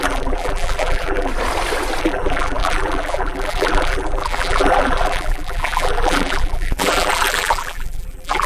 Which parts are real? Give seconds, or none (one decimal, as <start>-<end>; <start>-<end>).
1.3-2.0

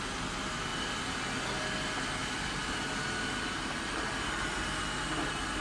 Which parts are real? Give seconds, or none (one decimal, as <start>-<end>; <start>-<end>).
0.0-5.6

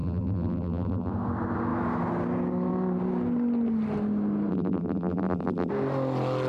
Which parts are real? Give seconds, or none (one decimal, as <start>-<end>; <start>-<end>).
1.1-4.5; 5.7-6.5

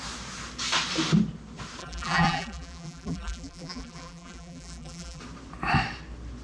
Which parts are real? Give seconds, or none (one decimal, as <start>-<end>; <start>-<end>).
0.0-1.8; 5.2-6.4

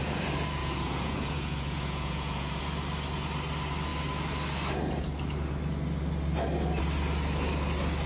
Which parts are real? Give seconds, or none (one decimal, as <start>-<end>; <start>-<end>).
0.0-0.6; 2.6-8.1

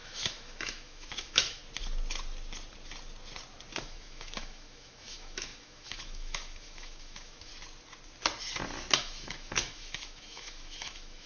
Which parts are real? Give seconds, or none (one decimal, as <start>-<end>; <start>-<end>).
1.6-3.8; 7.5-9.0

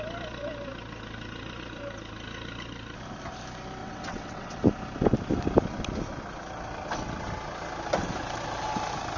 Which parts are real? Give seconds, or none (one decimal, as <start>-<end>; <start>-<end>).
0.0-3.8; 4.6-9.2

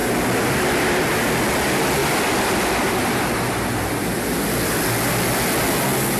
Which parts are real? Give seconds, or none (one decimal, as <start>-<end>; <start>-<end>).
0.0-6.2